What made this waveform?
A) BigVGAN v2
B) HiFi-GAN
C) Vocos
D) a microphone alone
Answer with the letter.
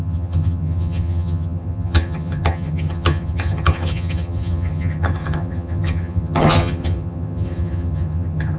B